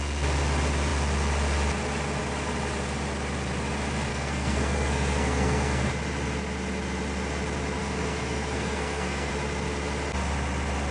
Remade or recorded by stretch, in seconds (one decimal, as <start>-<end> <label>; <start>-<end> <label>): 0.0-4.1 recorded; 4.1-5.9 remade; 5.9-7.8 recorded; 7.8-9.3 remade; 9.3-10.9 recorded

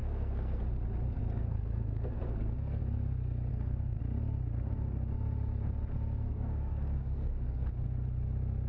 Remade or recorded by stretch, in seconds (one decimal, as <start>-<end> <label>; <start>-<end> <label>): 0.0-0.6 remade; 0.6-1.2 recorded; 1.2-2.8 remade; 2.8-3.5 recorded; 3.5-4.0 remade; 4.0-6.2 recorded; 6.2-7.7 remade; 7.7-8.7 recorded

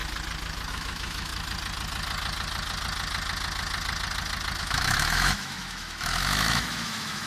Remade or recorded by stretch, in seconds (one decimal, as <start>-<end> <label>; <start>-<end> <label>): 0.0-0.7 recorded; 0.7-1.3 remade; 1.3-4.6 recorded; 4.6-7.3 remade

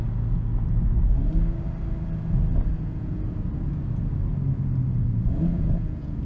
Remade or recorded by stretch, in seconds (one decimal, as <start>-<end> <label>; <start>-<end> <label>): 0.0-2.7 recorded; 2.7-3.5 remade; 3.5-5.1 recorded; 5.1-6.2 remade

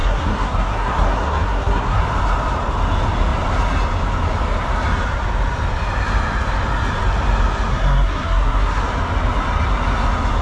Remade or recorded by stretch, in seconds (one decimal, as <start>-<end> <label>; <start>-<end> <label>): 0.0-2.0 remade; 2.0-7.7 recorded; 7.7-8.8 remade; 8.8-10.4 recorded

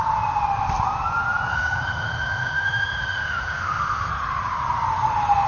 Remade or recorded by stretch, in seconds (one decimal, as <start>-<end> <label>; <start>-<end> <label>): 0.0-1.5 recorded; 1.5-4.1 remade; 4.1-5.5 recorded